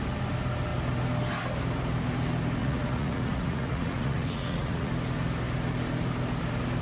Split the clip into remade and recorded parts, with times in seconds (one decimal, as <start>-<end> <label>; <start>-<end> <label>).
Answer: 0.0-2.6 recorded; 2.6-4.9 remade; 4.9-6.8 recorded